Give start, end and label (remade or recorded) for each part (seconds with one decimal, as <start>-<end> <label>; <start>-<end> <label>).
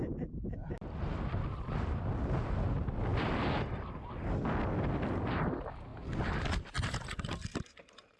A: 0.0-8.2 recorded